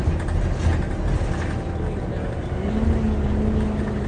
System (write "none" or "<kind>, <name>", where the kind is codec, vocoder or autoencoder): none